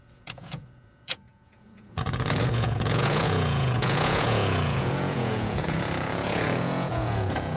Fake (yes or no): yes